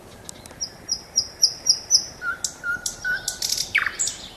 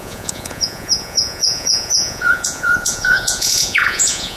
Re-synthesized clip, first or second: second